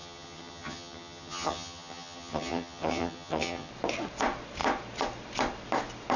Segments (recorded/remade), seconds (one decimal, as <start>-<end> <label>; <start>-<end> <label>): 0.0-3.7 remade; 3.7-6.2 recorded